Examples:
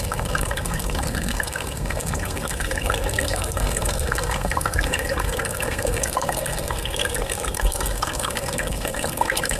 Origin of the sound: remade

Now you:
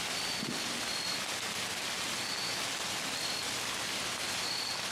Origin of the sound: recorded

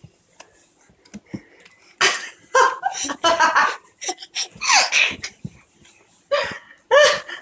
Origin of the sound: recorded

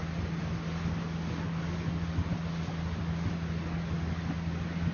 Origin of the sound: recorded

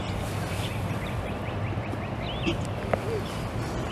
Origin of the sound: recorded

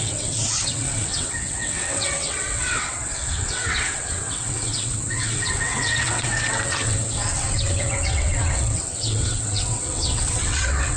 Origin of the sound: remade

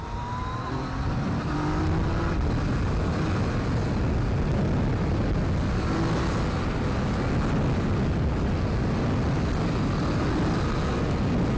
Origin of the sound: recorded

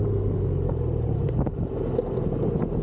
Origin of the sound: recorded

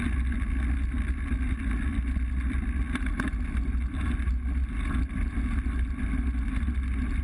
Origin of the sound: recorded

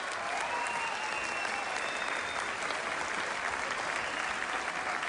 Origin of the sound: recorded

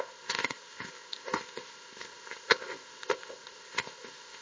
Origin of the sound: remade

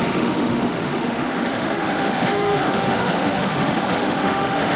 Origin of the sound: remade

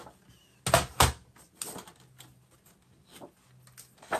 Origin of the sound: recorded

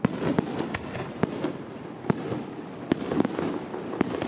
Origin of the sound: recorded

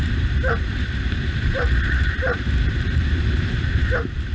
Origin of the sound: remade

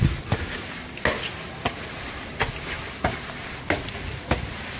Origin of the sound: recorded